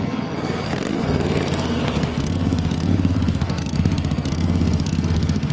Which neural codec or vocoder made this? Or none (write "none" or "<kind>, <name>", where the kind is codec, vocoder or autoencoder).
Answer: codec, SNAC